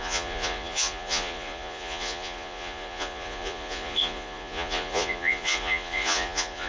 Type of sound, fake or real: fake